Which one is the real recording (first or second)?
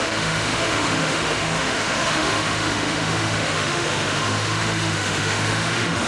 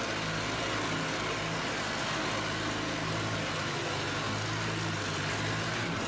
second